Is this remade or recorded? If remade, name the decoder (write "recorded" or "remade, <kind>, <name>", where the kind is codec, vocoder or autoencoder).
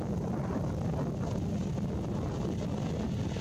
recorded